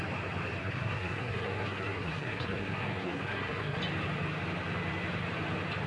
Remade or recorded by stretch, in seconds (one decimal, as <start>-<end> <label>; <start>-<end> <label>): 0.0-0.6 recorded; 0.6-3.8 remade; 3.8-5.9 recorded